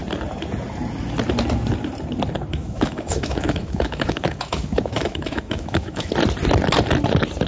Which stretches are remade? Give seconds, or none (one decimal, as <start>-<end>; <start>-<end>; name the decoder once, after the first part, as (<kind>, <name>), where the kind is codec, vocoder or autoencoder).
2.5-6.1 (autoencoder, DAC-VAE)

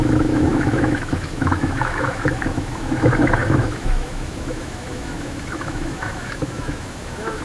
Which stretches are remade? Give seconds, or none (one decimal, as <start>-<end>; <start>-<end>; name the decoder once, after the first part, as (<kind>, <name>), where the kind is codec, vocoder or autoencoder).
0.0-7.4 (autoencoder, DAC-VAE)

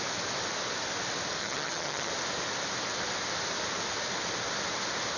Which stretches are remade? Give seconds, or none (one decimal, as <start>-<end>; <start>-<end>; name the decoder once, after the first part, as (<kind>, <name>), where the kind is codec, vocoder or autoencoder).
1.4-2.1 (vocoder, HiFi-GAN)

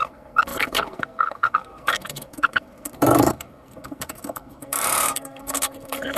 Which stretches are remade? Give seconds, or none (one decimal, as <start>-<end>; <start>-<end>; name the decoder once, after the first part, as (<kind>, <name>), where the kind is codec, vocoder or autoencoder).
0.0-6.2 (codec, SNAC)

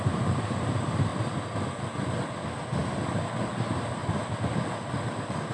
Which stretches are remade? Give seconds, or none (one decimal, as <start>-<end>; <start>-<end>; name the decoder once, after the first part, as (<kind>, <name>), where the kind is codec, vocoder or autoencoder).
2.8-3.5 (vocoder, BigVGAN v2); 4.0-4.7

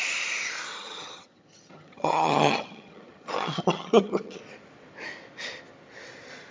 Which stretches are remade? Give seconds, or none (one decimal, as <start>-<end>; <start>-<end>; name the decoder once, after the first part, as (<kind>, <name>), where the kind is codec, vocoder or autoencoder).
0.7-4.4 (vocoder, HiFi-GAN)

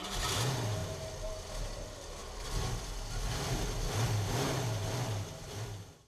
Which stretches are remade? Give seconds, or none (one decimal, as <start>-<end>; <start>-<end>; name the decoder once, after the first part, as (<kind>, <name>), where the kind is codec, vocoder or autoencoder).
0.8-1.3 (vocoder, BigVGAN v2)

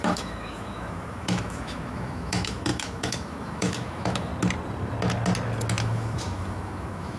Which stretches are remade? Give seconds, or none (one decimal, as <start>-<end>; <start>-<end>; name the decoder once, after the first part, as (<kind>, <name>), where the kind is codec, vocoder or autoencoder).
0.0-4.3 (autoencoder, DAC-VAE); 5.8-7.2